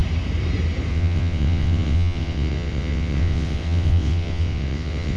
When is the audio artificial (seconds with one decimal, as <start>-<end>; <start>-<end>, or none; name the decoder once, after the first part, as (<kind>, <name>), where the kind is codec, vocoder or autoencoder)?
0.9-5.2 (vocoder, WaveNeXt)